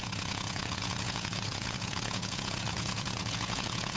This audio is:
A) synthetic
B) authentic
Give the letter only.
A